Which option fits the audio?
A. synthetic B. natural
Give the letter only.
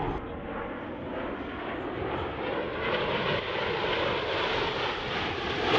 B